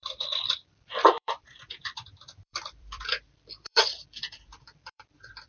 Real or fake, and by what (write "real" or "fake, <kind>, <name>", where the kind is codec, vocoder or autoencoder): fake, vocoder, BigVGAN v2